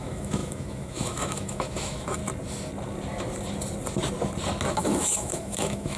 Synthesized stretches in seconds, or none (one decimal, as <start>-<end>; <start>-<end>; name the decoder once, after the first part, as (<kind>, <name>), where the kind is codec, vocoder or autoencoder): 0.0-2.2 (autoencoder, DAC-VAE); 4.7-6.0